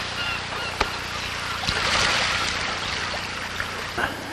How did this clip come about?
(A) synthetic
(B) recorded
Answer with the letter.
B